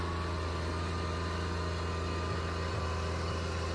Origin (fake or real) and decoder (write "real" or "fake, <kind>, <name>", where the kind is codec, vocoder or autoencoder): real